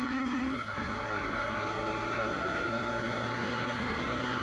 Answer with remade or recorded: remade